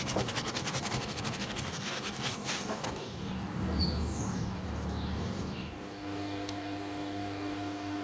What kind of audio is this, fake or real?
fake